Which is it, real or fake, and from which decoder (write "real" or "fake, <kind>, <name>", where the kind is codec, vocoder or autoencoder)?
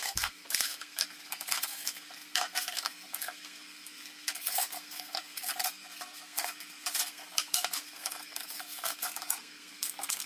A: fake, codec, SNAC